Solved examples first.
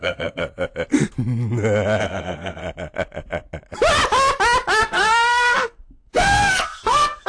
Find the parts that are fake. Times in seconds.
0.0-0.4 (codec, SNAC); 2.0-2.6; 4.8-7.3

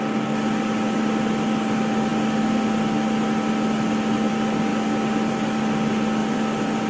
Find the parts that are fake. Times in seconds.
none